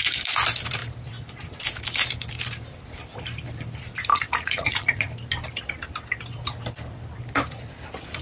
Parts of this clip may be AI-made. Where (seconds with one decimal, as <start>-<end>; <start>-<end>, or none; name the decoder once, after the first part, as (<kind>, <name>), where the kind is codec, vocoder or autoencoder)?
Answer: 4.1-5.1 (vocoder, Vocos)